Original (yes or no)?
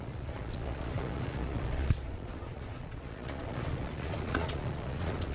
no